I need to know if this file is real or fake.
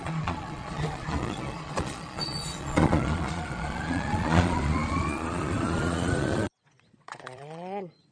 fake